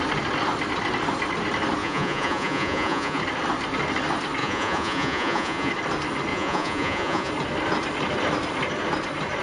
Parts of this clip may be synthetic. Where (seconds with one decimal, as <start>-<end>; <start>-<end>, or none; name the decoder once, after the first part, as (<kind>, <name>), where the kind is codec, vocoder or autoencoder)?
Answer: 1.8-3.2 (vocoder, Vocos); 4.4-5.7; 6.3-7.3